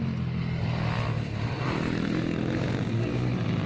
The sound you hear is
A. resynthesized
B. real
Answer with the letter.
B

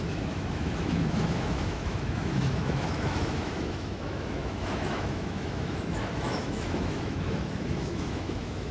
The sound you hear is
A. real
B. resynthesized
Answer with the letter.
B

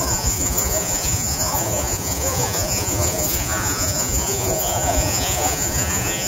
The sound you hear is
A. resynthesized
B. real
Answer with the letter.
A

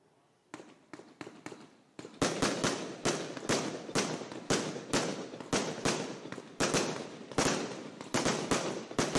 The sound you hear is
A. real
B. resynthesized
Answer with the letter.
A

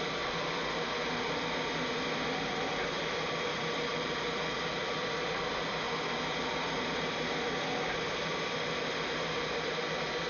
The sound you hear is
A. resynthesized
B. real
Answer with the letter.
B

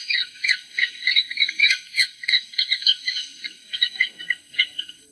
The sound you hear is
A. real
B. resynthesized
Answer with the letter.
B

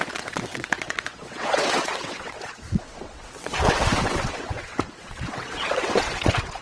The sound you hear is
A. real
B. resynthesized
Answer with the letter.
B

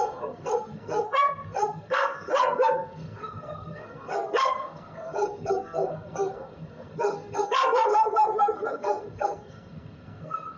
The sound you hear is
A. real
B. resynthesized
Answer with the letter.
B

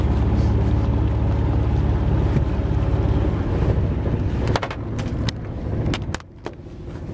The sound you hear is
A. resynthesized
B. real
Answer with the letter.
B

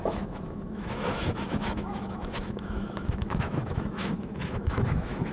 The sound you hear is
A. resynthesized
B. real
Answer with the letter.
A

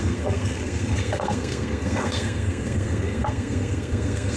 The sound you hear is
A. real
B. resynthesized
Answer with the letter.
B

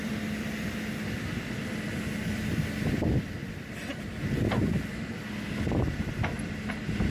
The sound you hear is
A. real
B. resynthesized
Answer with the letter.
A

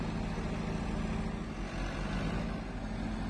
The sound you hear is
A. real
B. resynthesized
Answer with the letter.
A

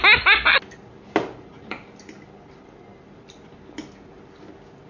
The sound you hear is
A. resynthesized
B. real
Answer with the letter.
B